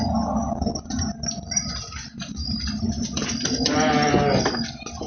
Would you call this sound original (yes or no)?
yes